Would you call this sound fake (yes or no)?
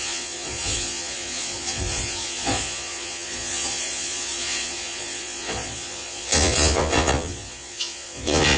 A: yes